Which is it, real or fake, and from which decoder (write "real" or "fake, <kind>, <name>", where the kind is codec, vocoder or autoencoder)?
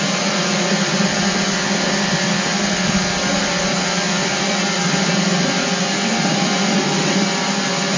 real